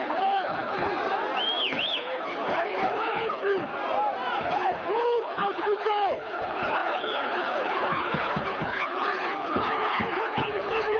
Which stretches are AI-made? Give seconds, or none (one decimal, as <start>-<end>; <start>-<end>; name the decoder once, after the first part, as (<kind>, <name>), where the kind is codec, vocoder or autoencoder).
0.0-0.9 (codec, HILCodec); 1.6-3.7; 4.4-11.0